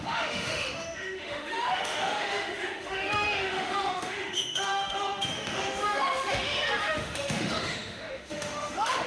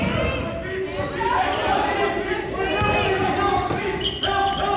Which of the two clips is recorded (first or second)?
second